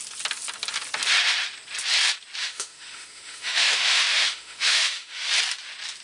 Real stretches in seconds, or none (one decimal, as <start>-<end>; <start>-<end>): 0.0-2.4; 5.3-6.0